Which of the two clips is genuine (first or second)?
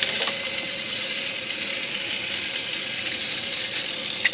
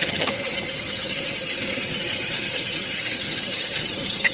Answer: first